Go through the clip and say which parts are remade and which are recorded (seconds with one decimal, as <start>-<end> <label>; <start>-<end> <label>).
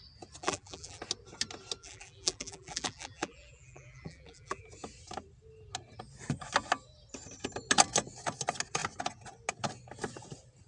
0.0-0.4 recorded; 0.4-1.0 remade; 1.0-1.8 recorded; 1.8-4.6 remade; 4.6-10.7 recorded